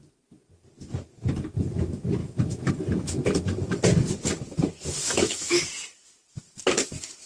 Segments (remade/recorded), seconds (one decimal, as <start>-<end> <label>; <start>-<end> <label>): 0.0-2.2 recorded; 2.2-2.7 remade; 2.7-5.0 recorded; 5.0-5.6 remade; 5.6-7.3 recorded